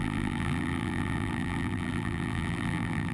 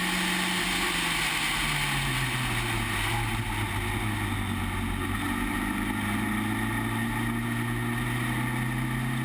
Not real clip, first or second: first